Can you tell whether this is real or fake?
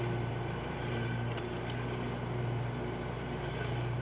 fake